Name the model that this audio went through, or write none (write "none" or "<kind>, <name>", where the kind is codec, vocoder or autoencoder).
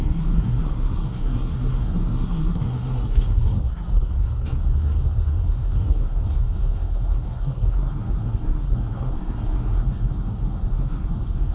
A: codec, SNAC